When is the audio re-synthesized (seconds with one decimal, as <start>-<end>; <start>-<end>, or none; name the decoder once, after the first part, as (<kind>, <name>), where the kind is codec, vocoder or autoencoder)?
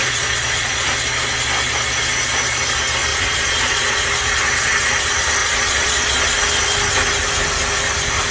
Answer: 0.0-0.9 (vocoder, Vocos); 3.1-4.1; 5.4-6.2